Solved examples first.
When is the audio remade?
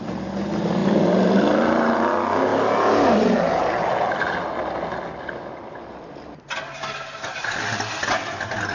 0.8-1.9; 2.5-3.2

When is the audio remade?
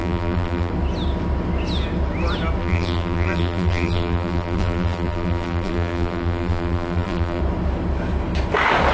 0.0-0.7; 2.6-7.4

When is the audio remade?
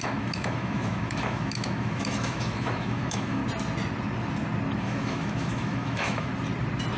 0.0-3.4; 4.8-6.3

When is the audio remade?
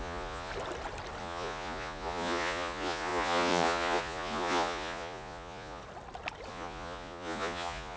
0.0-0.5; 1.2-5.8; 6.5-8.0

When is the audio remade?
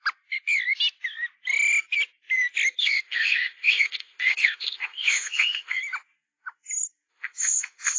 2.8-5.8; 7.1-8.0